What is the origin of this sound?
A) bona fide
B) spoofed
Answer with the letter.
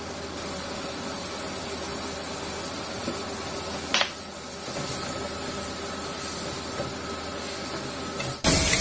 A